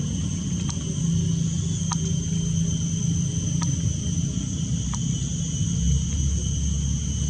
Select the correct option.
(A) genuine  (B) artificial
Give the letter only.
A